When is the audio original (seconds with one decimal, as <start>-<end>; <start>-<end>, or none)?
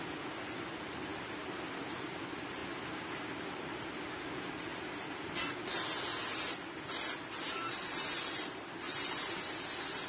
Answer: 0.0-10.1